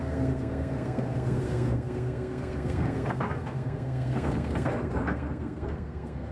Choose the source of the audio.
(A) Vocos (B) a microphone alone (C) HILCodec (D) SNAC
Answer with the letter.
D